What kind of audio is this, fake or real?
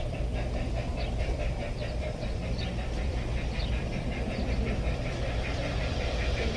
fake